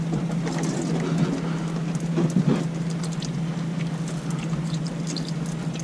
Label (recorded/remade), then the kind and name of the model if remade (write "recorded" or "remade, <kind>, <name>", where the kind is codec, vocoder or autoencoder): recorded